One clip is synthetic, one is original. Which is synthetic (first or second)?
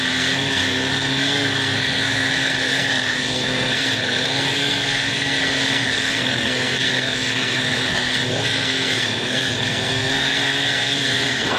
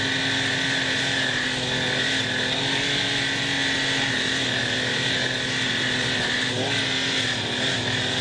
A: first